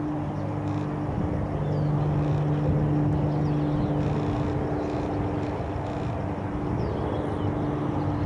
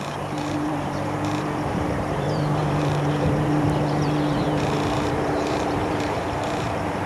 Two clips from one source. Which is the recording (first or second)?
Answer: first